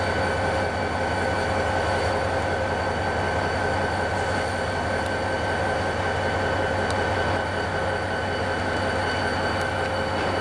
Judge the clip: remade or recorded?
recorded